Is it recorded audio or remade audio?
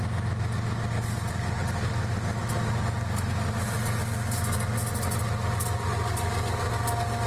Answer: recorded